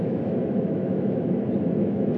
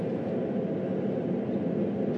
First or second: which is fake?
first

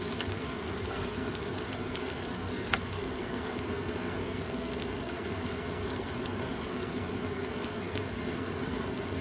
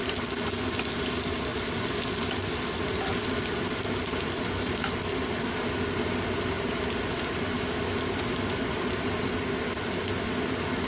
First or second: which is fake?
first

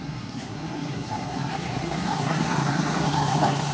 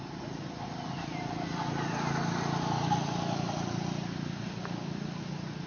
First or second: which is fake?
first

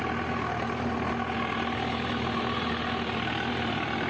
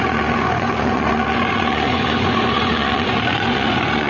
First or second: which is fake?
second